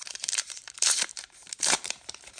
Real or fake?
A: fake